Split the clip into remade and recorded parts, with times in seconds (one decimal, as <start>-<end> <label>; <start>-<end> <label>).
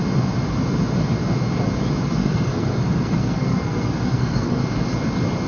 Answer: 0.0-2.2 recorded; 2.2-4.6 remade; 4.6-5.5 recorded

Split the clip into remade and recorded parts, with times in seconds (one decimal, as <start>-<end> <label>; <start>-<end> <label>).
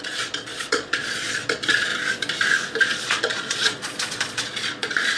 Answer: 0.0-1.9 remade; 1.9-2.8 recorded; 2.8-5.2 remade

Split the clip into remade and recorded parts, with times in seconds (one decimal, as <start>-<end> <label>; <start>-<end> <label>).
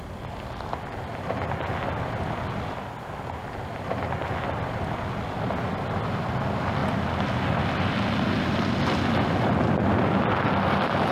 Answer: 0.0-11.1 recorded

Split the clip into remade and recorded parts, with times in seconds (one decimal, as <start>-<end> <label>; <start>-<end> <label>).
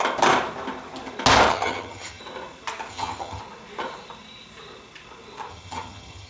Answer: 0.0-1.5 recorded; 1.5-2.2 remade; 2.2-2.9 recorded; 2.9-3.4 remade; 3.4-5.5 recorded; 5.5-6.3 remade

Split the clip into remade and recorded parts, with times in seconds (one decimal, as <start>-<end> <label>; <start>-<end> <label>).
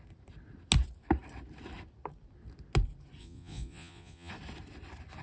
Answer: 0.0-3.2 recorded; 3.2-4.3 remade; 4.3-5.2 recorded